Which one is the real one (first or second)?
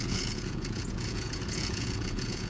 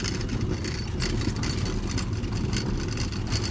second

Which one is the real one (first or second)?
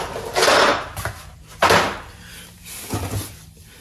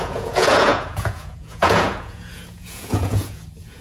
first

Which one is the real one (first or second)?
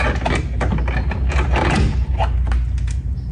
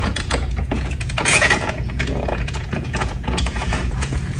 first